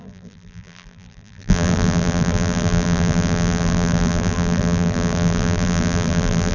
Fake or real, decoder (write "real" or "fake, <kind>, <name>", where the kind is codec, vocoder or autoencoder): fake, vocoder, BigVGAN v2